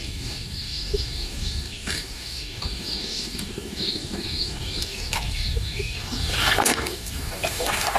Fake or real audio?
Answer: fake